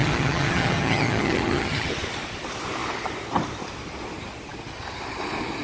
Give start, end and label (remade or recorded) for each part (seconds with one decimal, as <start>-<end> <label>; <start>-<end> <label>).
0.0-1.9 remade; 1.9-5.6 recorded